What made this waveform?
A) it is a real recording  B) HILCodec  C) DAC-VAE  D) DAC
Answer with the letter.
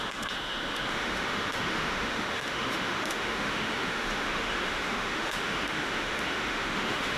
C